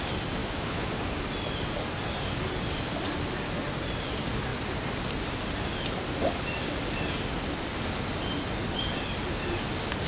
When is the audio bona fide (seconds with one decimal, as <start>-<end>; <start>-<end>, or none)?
0.0-0.4; 0.9-10.1